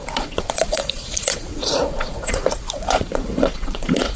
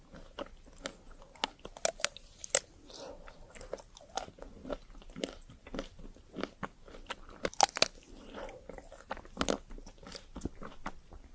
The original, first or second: second